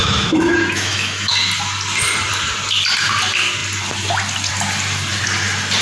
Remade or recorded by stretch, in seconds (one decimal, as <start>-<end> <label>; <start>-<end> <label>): 0.0-1.3 remade; 1.3-5.8 recorded